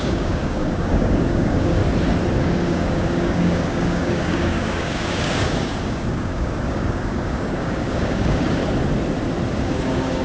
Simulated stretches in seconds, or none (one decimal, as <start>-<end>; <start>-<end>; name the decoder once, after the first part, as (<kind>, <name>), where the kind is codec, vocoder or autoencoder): 0.0-1.8 (codec, DAC); 2.4-8.6; 9.5-10.2